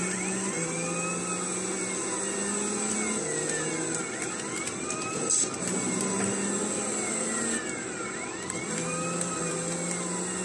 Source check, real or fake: real